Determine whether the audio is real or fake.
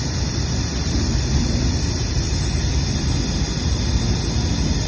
fake